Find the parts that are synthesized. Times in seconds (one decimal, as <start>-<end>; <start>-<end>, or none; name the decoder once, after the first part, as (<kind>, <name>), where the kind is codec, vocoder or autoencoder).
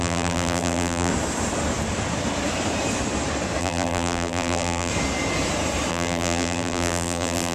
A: 0.0-1.1 (vocoder, BigVGAN v2); 3.6-4.9; 5.9-7.5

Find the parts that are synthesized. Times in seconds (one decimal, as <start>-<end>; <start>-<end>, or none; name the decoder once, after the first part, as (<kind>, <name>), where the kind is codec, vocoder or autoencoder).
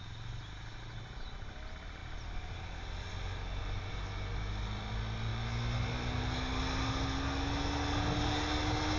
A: none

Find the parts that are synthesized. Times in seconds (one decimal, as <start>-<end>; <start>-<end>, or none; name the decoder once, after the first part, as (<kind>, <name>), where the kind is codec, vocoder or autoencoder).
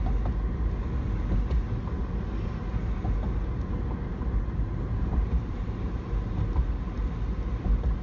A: 4.1-5.9 (vocoder, BigVGAN v2)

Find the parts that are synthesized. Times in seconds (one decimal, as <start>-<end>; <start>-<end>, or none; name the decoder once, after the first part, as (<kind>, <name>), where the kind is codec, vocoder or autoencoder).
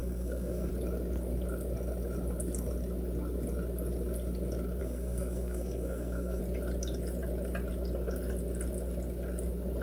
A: 0.0-0.7 (codec, SNAC); 4.8-6.4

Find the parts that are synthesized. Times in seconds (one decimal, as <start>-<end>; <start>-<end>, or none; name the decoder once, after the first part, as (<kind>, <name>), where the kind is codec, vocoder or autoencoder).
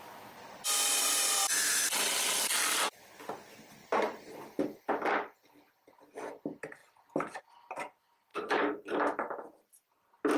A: 3.8-4.8 (vocoder, BigVGAN v2)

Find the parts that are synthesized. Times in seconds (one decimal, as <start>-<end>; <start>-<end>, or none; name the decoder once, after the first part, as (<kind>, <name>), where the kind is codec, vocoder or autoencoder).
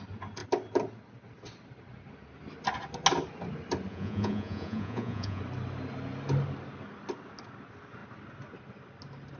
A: 3.9-5.4 (vocoder, Vocos)